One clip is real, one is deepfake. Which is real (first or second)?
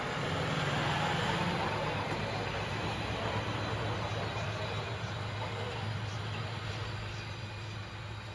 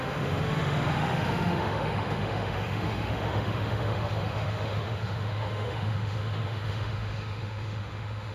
first